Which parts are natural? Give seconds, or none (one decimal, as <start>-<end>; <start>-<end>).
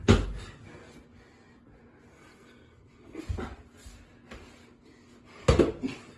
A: 0.0-2.1; 3.2-6.2